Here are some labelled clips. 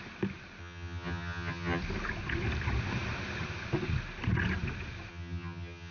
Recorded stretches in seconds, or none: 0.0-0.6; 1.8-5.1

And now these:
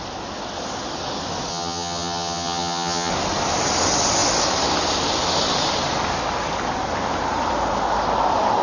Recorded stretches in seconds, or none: 0.0-1.5; 3.1-8.6

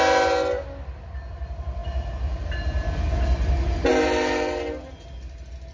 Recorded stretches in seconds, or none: 0.0-5.7

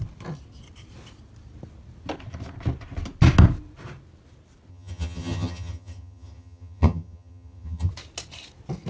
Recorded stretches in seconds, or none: 0.0-4.7; 7.9-8.9

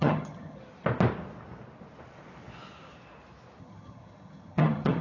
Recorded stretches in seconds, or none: 0.6-3.6